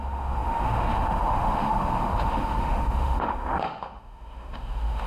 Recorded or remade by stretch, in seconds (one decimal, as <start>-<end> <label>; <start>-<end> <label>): 0.0-5.1 remade